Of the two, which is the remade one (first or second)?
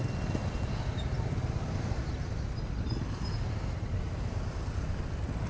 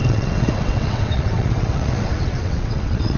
second